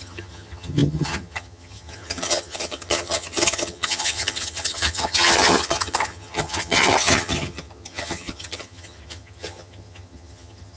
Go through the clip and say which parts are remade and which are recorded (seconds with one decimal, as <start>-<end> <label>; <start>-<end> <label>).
0.0-10.8 remade